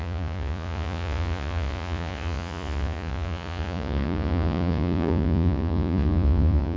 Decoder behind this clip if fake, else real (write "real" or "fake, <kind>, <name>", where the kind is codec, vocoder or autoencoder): fake, vocoder, Vocos